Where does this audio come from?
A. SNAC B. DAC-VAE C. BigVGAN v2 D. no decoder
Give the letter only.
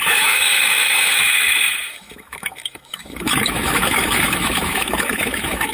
B